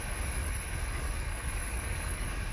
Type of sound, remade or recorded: remade